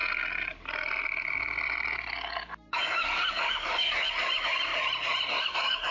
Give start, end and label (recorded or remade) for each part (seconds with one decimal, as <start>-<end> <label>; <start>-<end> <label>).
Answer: 0.0-2.7 recorded; 2.7-4.7 remade; 4.7-5.4 recorded; 5.4-5.9 remade